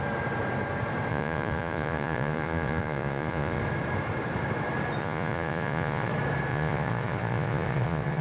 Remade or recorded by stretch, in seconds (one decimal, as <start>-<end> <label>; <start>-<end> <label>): 0.0-1.1 recorded; 1.1-3.6 remade; 3.6-5.0 recorded; 5.0-6.1 remade; 6.1-6.5 recorded; 6.5-8.2 remade